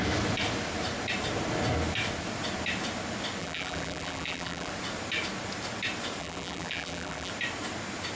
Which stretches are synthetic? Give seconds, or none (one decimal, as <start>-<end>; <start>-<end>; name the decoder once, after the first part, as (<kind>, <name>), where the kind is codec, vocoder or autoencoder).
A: 3.4-4.7 (vocoder, BigVGAN v2); 6.2-7.3